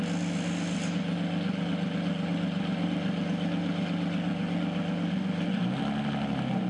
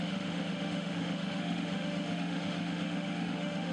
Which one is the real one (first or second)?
first